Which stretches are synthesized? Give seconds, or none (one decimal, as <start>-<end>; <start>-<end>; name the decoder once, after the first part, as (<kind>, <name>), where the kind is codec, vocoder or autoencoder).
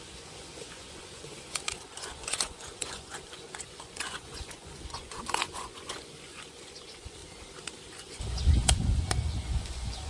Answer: 0.0-7.2 (vocoder, Vocos); 7.9-10.1